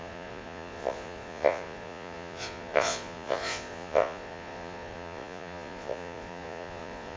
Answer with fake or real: fake